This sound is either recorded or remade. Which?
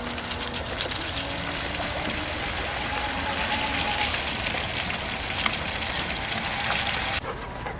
recorded